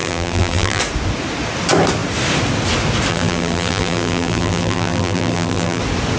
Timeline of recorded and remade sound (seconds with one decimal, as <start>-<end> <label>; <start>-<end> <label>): 0.0-0.8 remade; 0.8-3.1 recorded; 3.1-5.8 remade; 5.8-6.2 recorded